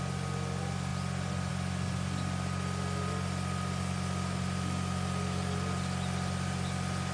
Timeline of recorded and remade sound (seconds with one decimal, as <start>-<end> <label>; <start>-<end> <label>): 0.0-7.1 recorded